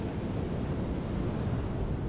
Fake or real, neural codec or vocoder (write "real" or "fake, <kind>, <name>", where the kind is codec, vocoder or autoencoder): real